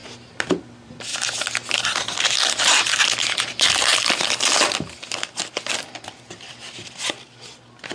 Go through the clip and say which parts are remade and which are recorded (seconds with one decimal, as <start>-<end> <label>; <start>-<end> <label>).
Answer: 0.0-0.6 recorded; 0.6-1.1 remade; 1.1-1.7 recorded; 1.7-3.9 remade; 3.9-5.4 recorded; 5.4-7.9 remade